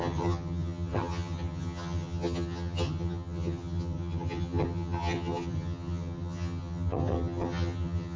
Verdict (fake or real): fake